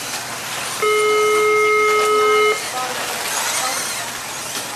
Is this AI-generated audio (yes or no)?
no